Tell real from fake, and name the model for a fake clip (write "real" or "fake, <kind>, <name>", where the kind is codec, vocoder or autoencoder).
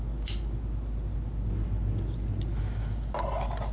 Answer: real